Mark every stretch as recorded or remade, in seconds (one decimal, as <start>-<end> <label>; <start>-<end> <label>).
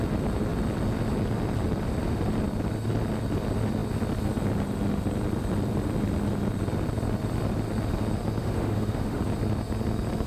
0.0-8.4 recorded; 8.4-9.2 remade; 9.2-10.3 recorded